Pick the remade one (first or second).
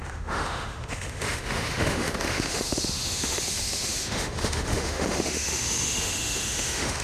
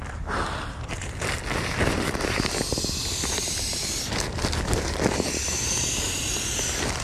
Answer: first